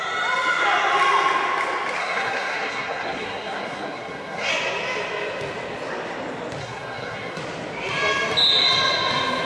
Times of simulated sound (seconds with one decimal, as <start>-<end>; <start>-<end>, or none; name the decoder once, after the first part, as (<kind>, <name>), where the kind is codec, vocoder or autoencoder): 2.0-4.5 (codec, SNAC); 6.6-7.4